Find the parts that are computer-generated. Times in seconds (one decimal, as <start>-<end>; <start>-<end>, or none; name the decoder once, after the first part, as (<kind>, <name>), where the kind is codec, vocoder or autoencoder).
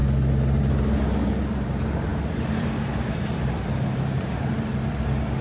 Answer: 0.6-5.4 (vocoder, BigVGAN v2)